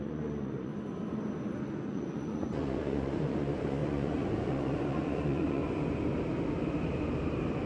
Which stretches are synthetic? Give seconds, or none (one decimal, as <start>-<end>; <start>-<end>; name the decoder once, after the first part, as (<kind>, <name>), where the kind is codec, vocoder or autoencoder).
0.0-0.7 (vocoder, Vocos); 1.6-5.6